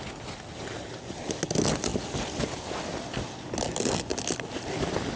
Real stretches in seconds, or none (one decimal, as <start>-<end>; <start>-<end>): 0.0-5.2